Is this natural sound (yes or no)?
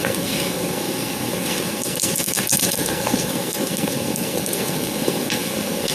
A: no